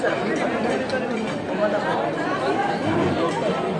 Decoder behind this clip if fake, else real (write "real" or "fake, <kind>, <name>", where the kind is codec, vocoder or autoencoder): real